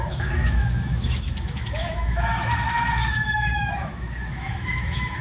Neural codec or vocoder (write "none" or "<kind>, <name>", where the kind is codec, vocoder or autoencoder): autoencoder, DAC-VAE